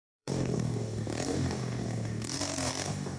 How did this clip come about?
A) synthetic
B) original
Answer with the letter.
A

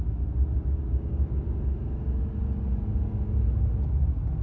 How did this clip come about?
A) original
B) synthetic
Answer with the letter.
A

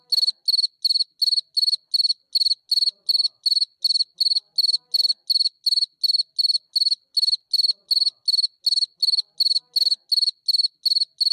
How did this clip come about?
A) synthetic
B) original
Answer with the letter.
B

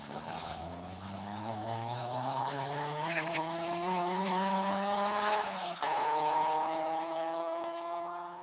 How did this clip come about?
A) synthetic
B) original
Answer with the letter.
A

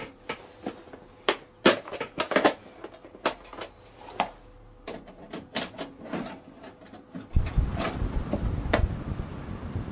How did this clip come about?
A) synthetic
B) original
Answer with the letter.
B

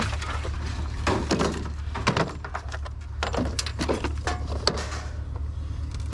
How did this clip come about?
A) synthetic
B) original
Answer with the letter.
B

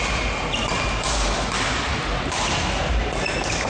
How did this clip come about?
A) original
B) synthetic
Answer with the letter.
A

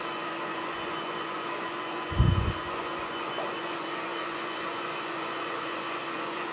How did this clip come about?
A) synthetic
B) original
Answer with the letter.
A